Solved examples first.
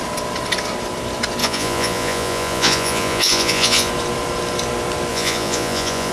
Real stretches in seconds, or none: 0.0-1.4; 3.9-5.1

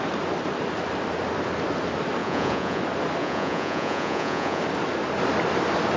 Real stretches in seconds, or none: 0.0-2.2; 2.8-3.2; 4.6-6.0

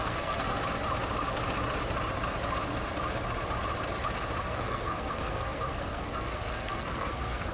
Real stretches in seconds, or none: 0.5-4.4

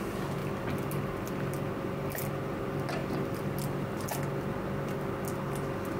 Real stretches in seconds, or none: 0.0-6.0

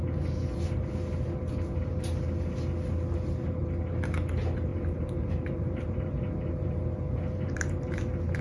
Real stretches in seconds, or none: 0.0-4.7; 8.0-8.4

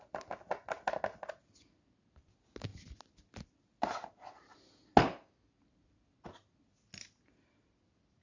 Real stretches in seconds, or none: 0.0-8.2

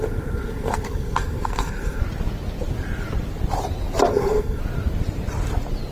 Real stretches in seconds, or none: 2.0-4.1; 4.6-5.9